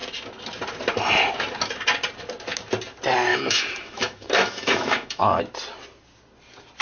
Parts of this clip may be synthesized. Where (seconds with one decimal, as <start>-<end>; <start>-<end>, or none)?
3.3-5.4